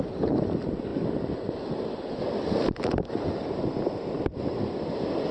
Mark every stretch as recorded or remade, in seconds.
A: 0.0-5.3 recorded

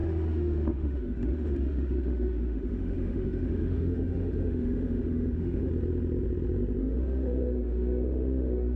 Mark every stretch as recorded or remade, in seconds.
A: 0.0-5.7 remade; 5.7-6.8 recorded; 6.8-8.8 remade

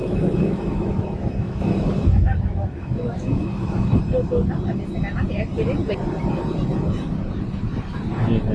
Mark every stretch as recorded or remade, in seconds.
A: 0.0-4.0 remade; 4.0-8.5 recorded

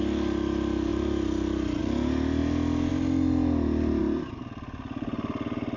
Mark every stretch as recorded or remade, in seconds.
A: 0.0-5.8 recorded

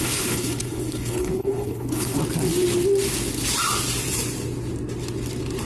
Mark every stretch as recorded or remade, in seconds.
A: 0.0-2.2 remade; 2.2-5.7 recorded

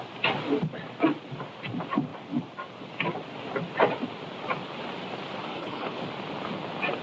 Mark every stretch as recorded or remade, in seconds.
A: 0.0-5.5 recorded; 5.5-6.0 remade; 6.0-7.0 recorded

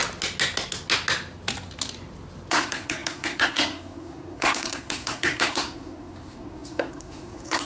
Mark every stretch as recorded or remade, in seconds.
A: 0.0-2.5 recorded; 2.5-7.6 remade

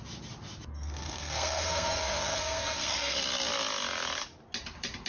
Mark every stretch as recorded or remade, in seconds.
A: 0.0-0.7 recorded; 0.7-3.2 remade; 3.2-5.1 recorded